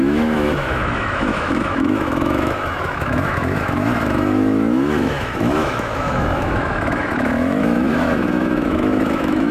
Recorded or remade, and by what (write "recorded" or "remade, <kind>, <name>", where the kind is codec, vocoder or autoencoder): remade, autoencoder, DAC-VAE